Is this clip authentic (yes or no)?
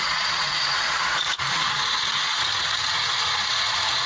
no